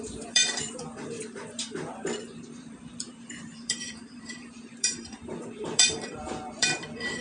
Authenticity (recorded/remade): remade